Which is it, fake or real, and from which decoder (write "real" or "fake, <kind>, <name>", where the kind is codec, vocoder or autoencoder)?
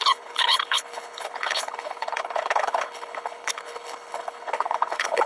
fake, codec, HILCodec